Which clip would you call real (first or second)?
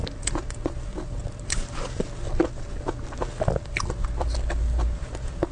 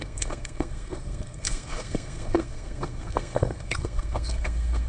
first